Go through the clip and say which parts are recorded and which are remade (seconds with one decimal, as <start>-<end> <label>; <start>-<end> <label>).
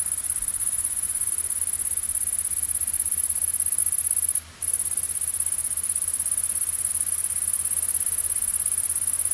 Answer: 0.0-0.6 recorded; 0.6-1.3 remade; 1.3-9.3 recorded